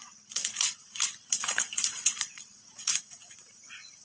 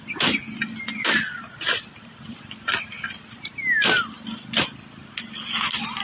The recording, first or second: second